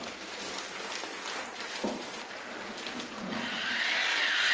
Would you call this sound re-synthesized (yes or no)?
yes